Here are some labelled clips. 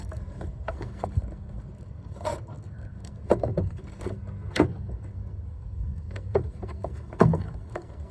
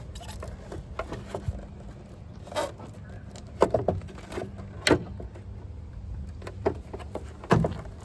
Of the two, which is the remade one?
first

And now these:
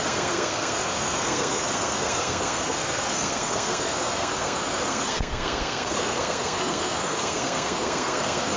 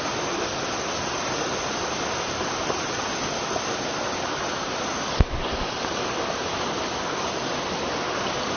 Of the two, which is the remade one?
first